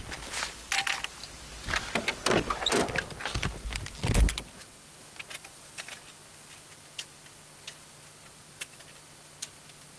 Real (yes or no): yes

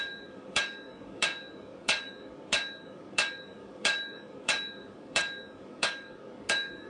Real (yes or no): no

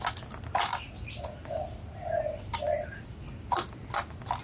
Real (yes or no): yes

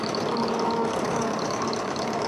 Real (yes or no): no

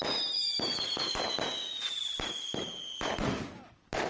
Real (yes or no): yes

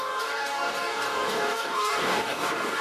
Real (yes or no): no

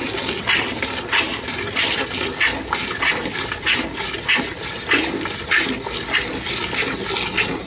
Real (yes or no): yes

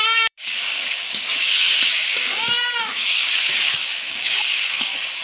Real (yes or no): no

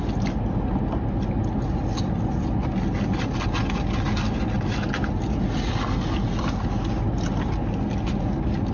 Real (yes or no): yes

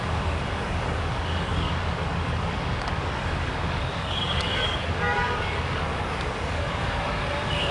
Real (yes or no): no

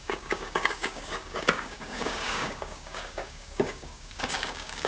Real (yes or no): no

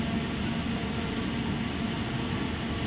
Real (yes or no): yes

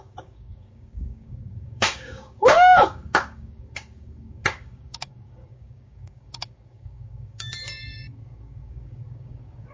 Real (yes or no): no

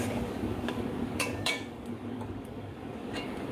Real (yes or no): no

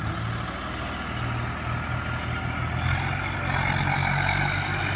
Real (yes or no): yes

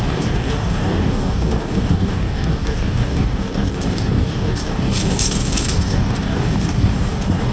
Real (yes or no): no